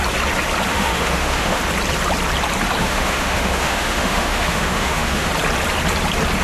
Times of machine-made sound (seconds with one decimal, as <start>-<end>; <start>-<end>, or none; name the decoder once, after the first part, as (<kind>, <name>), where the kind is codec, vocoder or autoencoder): 0.7-1.6 (autoencoder, DAC-VAE); 2.8-5.3